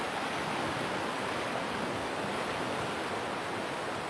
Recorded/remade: recorded